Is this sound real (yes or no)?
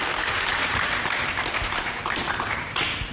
no